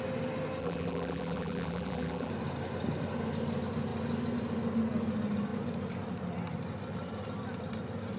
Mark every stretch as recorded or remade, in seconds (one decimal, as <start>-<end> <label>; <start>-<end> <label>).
0.0-0.6 recorded; 0.6-2.3 remade; 2.3-8.2 recorded